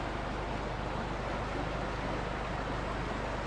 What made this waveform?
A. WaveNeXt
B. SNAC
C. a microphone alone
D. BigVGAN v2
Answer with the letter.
C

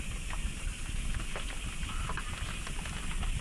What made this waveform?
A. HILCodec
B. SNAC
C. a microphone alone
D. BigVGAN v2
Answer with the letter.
C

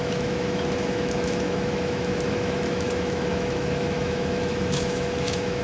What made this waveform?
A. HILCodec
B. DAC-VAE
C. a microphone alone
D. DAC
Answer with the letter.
B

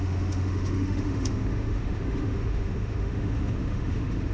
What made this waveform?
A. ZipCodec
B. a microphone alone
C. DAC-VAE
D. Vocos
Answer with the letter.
C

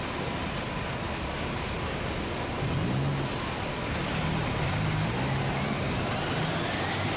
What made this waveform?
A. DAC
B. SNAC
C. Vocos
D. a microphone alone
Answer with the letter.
D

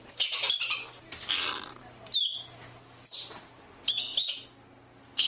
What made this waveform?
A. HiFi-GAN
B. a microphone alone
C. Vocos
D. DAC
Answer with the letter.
B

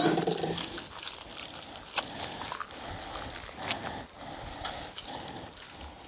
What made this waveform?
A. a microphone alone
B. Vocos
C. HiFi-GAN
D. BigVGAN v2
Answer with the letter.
A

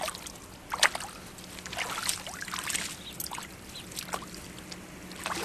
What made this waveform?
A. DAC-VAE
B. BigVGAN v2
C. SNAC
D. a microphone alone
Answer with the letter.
D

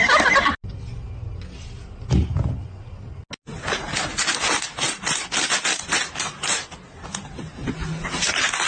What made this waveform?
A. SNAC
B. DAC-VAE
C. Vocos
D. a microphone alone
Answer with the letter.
D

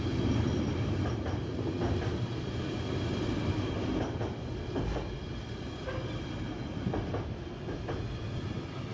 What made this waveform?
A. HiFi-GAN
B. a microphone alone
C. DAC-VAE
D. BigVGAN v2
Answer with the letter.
B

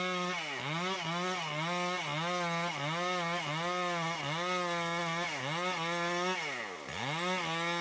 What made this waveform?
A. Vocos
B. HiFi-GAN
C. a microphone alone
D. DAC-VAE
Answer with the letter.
C